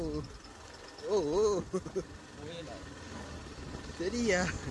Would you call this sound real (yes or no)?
yes